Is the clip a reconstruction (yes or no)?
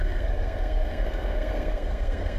yes